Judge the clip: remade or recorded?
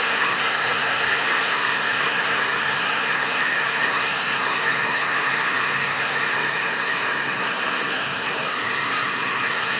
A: remade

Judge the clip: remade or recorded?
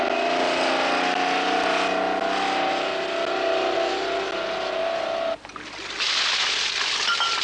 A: recorded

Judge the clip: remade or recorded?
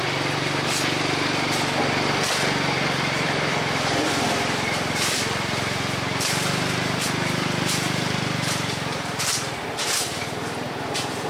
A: remade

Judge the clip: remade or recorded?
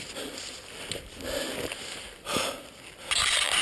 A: recorded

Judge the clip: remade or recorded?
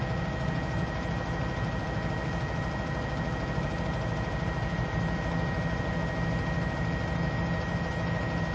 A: recorded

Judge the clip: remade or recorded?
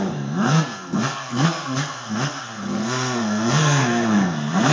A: remade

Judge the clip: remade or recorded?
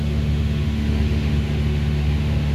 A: remade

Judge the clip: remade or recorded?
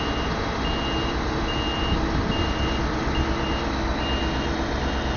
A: recorded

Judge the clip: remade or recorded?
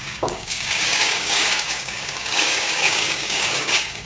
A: remade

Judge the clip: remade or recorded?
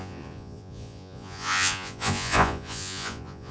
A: remade